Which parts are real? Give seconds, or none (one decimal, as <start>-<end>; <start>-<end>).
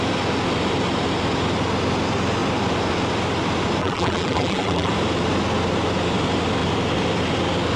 0.0-3.8; 4.9-7.8